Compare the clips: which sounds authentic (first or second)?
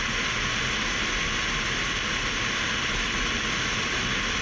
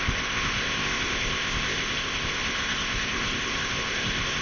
first